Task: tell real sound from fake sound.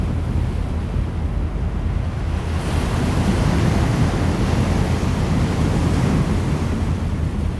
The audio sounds real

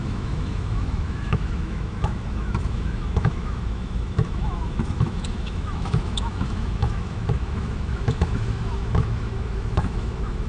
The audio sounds fake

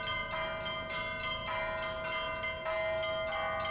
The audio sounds real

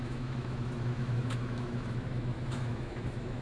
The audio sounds fake